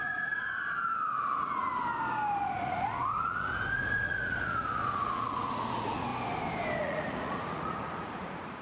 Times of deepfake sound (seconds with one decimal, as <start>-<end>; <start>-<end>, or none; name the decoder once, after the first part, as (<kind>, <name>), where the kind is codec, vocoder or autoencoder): 0.0-1.7 (vocoder, Vocos); 2.4-6.1; 6.8-8.6